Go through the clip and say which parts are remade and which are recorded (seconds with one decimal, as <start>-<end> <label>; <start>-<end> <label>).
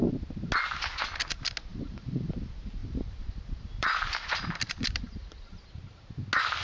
0.0-1.7 recorded; 1.7-2.3 remade; 2.3-2.8 recorded; 2.8-5.7 remade; 5.7-6.6 recorded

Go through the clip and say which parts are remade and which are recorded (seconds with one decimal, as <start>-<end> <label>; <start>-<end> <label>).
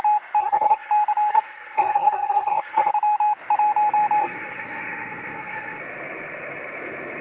0.0-0.4 recorded; 0.4-0.9 remade; 0.9-1.3 recorded; 1.3-2.9 remade; 2.9-4.2 recorded; 4.2-5.8 remade; 5.8-7.2 recorded